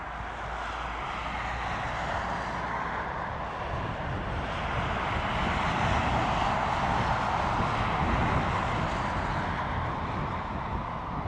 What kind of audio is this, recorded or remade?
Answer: recorded